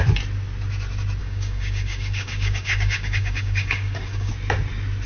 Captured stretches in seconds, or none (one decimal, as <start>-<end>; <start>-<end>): 0.0-1.2; 4.3-5.1